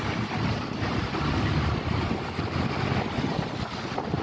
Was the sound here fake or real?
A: real